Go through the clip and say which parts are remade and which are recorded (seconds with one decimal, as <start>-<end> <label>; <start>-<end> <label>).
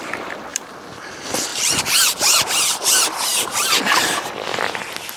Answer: 0.0-0.5 recorded; 0.5-1.1 remade; 1.1-1.5 recorded; 1.5-2.5 remade; 2.5-3.3 recorded; 3.3-3.8 remade; 3.8-5.2 recorded